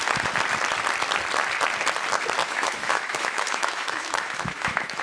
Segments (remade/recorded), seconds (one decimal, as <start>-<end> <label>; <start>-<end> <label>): 0.0-2.4 recorded; 2.4-5.0 remade